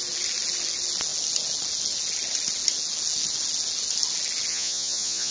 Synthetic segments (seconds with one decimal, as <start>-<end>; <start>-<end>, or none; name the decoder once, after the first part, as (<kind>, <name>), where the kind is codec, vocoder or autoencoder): 4.5-5.3 (vocoder, Vocos)